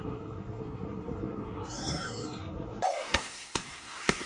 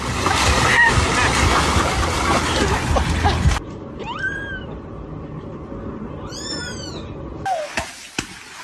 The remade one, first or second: first